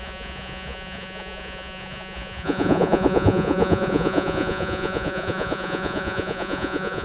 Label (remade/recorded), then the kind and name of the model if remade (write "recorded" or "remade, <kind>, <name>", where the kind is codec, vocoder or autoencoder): remade, vocoder, Vocos